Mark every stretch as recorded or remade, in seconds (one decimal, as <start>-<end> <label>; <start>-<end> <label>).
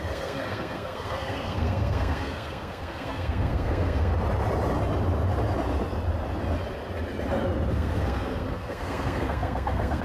0.0-4.1 remade; 4.1-7.7 recorded; 7.7-10.0 remade